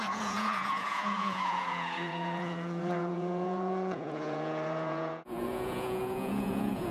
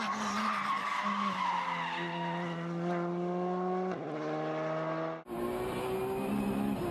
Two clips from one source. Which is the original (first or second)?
second